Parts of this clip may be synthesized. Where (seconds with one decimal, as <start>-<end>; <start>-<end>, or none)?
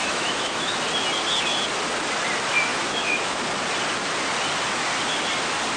0.0-0.7; 2.7-3.4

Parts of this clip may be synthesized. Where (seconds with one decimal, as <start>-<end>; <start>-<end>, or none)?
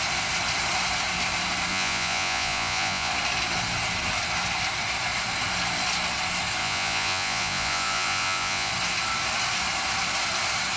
1.7-3.1; 6.6-8.7